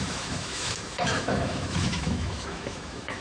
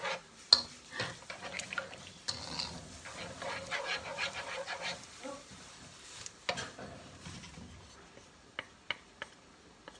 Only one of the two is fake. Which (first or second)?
first